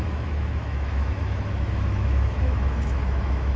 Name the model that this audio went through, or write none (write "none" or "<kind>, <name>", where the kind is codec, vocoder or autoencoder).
autoencoder, DAC-VAE